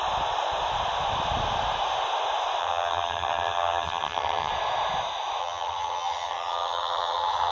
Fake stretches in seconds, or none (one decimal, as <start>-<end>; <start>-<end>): 2.6-4.5; 5.4-7.5